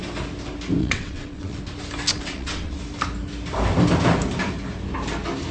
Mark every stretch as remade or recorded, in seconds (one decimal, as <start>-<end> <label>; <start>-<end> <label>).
0.0-0.8 recorded; 0.8-1.6 remade; 1.6-2.1 recorded; 2.1-2.8 remade; 2.8-5.5 recorded